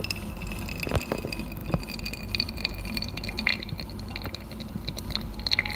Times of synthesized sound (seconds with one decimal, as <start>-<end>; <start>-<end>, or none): none